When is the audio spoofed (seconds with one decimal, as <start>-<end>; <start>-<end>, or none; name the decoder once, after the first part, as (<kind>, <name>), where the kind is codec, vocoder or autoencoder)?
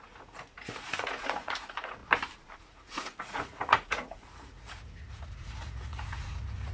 0.0-2.0 (vocoder, Vocos); 2.6-6.7